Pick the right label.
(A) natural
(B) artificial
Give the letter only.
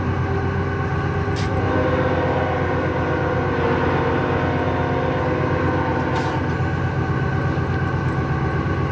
A